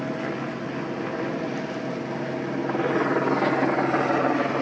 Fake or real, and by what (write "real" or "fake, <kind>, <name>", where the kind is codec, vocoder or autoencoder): real